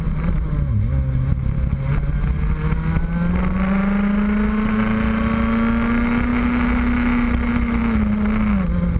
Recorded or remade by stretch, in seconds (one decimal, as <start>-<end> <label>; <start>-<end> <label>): 0.0-9.0 recorded